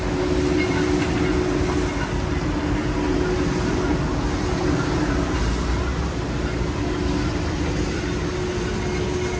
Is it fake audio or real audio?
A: real